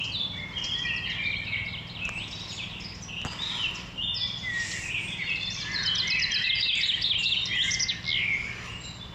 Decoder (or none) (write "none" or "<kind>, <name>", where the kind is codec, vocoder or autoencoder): none